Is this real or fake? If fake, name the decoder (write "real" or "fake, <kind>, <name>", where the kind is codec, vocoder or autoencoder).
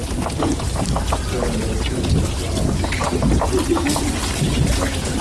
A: real